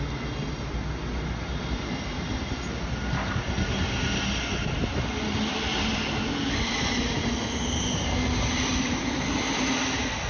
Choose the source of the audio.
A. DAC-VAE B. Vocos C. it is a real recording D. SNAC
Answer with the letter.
C